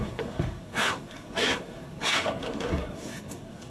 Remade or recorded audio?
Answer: remade